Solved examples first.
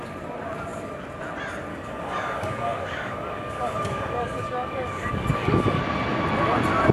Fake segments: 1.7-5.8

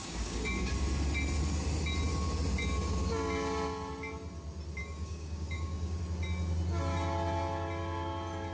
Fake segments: 0.0-0.7; 4.8-6.0

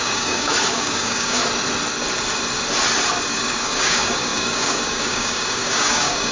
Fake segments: 0.0-1.4; 3.3-6.3

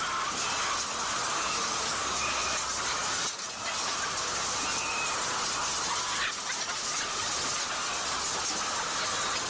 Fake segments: 1.2-2.4

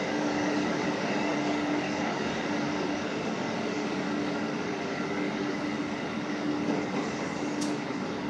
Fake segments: 0.0-8.3

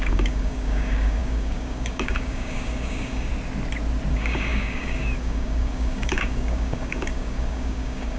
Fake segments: 0.0-3.3; 4.1-8.2